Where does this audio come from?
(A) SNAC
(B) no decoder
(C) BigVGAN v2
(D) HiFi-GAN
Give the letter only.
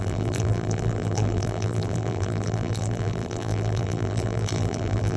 C